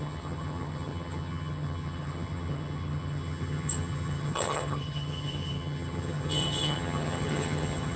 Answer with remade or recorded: remade